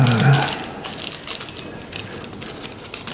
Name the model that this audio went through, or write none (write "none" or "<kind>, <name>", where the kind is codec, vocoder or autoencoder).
none